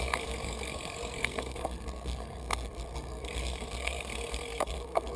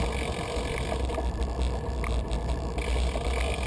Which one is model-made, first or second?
first